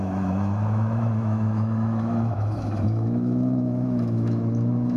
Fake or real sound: fake